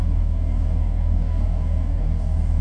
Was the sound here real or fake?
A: fake